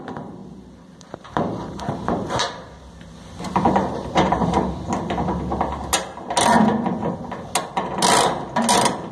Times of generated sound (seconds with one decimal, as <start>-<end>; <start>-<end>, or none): 0.4-4.5

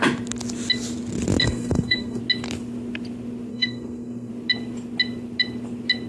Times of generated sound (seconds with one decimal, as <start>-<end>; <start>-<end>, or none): 1.4-2.2; 3.5-4.3

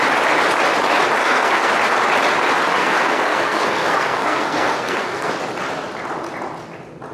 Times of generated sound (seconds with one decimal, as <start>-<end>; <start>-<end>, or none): 1.2-1.7; 2.8-5.3

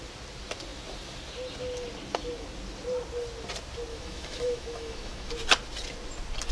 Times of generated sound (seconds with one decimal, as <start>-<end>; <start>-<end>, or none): 3.9-5.3